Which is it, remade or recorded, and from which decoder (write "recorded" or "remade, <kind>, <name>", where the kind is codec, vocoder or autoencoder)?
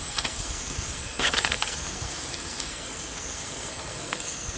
remade, codec, SNAC